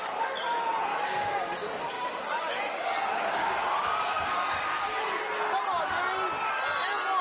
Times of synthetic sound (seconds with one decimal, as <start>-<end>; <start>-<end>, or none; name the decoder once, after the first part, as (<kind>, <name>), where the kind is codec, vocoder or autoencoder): 0.9-5.2 (codec, DAC)